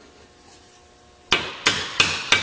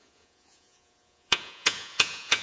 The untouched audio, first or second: first